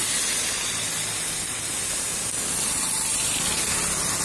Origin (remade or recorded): recorded